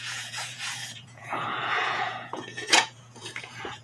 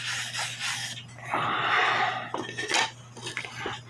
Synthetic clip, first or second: first